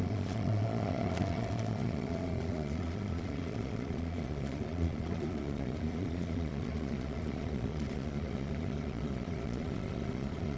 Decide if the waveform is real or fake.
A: fake